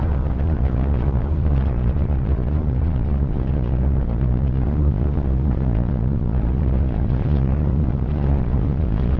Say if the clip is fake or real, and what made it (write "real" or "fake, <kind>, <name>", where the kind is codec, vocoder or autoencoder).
fake, vocoder, Vocos